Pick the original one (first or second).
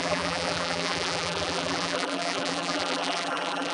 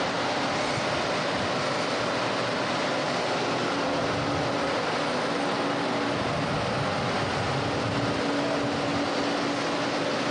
second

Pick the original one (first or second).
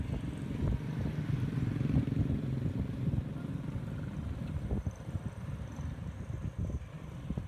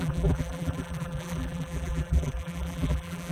first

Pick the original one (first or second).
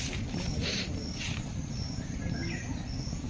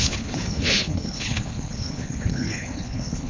first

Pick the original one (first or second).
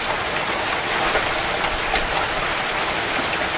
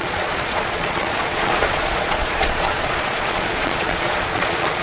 first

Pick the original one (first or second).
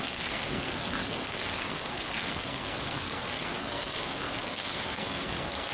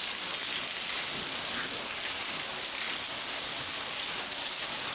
second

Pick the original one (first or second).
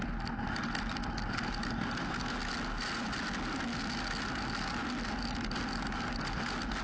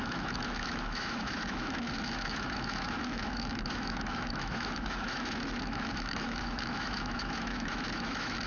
first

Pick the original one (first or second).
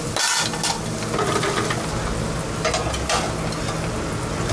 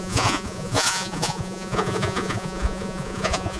first